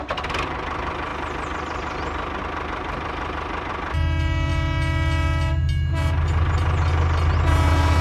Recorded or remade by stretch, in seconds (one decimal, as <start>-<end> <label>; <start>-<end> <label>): 0.0-8.0 recorded

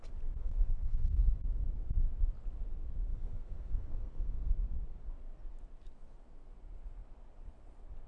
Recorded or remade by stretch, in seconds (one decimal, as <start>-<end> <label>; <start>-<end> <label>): 0.0-0.4 recorded; 0.4-1.2 remade; 1.2-3.1 recorded; 3.1-4.5 remade; 4.5-8.1 recorded

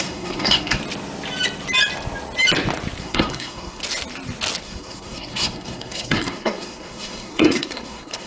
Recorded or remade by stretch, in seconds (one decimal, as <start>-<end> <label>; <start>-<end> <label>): 0.0-0.8 remade; 0.8-3.0 recorded; 3.0-3.8 remade; 3.8-4.6 recorded; 4.6-8.3 remade

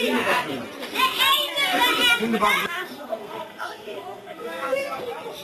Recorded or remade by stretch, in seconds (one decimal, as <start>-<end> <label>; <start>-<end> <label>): 0.0-2.6 recorded; 2.6-5.0 remade; 5.0-5.4 recorded

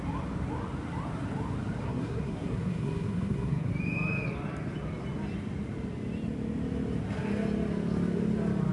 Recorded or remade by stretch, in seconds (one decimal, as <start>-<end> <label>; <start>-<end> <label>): 0.0-1.8 recorded; 1.8-3.7 remade; 3.7-8.7 recorded

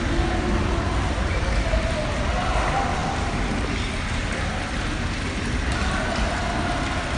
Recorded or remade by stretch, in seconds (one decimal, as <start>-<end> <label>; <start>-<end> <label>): 0.0-7.2 recorded

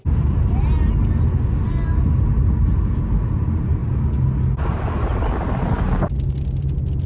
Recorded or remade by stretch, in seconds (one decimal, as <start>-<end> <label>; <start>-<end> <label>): 0.0-7.1 recorded

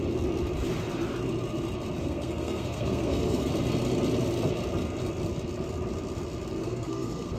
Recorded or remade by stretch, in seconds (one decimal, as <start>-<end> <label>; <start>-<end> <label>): 0.0-2.0 recorded; 2.0-3.5 remade; 3.5-6.6 recorded; 6.6-7.4 remade